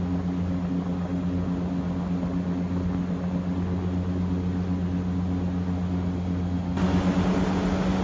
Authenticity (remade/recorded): recorded